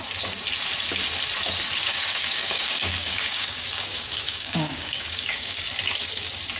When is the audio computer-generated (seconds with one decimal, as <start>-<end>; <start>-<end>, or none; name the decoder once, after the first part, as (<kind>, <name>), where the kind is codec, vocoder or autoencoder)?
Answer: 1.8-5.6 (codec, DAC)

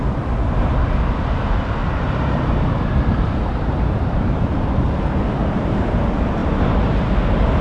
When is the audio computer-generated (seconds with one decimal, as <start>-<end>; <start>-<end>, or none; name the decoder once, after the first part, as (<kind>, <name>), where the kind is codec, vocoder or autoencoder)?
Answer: 1.8-5.0 (vocoder, BigVGAN v2); 5.4-6.0; 6.4-7.1

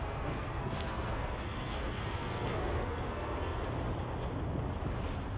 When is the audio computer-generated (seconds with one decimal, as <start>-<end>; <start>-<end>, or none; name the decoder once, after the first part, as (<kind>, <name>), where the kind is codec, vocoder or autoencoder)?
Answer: 0.0-3.6 (codec, SNAC)

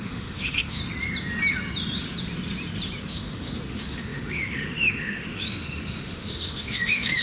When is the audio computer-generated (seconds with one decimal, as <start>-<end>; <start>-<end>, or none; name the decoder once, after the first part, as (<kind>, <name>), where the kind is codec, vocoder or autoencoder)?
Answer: 0.0-0.8 (autoencoder, DAC-VAE); 3.0-7.2

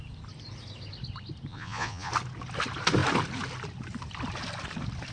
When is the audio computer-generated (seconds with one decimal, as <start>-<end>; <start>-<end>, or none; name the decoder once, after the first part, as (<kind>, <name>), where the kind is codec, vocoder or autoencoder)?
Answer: 1.5-2.1 (vocoder, Vocos)

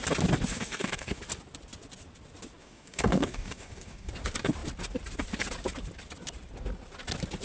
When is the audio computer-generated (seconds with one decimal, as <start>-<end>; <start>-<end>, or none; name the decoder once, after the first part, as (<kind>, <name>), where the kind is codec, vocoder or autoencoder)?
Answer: 0.5-1.2 (codec, DAC); 2.6-4.1

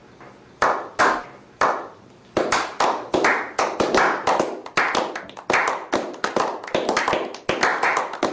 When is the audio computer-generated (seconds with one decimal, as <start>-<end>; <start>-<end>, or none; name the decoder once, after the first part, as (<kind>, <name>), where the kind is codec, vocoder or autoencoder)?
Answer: none